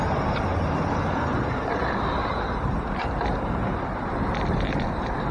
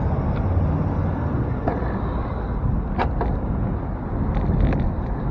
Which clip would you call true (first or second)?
second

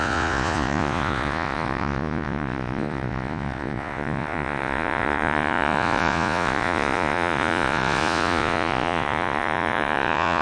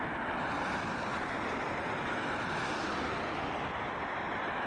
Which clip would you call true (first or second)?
second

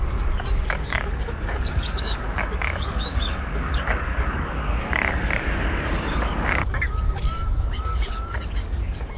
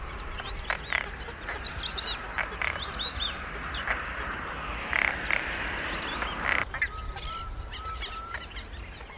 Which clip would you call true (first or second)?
second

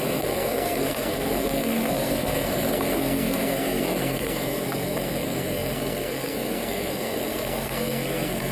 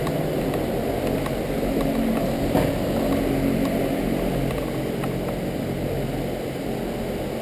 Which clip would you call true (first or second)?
second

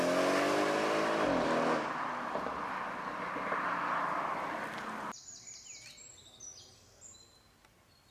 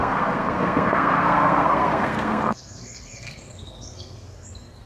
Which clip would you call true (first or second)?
first